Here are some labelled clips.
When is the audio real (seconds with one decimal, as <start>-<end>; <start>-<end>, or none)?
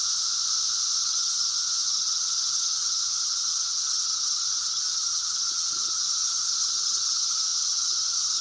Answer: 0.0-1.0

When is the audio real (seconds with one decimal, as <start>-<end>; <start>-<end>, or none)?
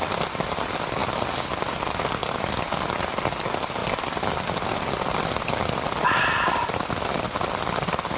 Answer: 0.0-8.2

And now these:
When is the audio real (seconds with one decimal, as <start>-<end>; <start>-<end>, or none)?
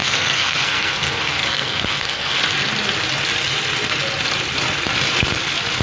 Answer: 2.4-5.8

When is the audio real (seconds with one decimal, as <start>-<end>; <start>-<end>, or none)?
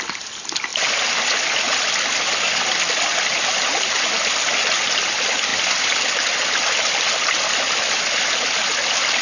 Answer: 0.7-5.1; 5.5-8.7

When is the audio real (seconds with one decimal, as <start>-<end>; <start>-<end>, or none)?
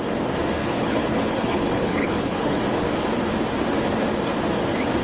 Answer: 0.0-0.6; 2.6-5.0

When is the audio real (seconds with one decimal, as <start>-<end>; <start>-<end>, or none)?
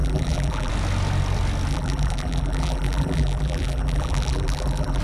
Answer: 0.7-1.7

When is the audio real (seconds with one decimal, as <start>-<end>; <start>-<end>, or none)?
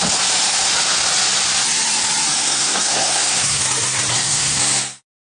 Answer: 0.0-2.4; 3.6-4.1; 4.6-5.2